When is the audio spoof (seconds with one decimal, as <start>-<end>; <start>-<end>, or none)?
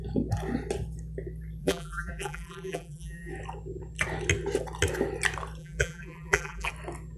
1.6-3.3; 5.6-6.7